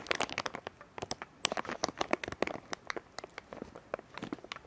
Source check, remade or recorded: recorded